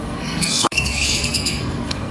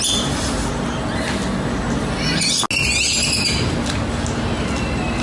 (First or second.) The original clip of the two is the second